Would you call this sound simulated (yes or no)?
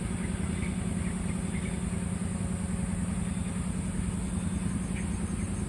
no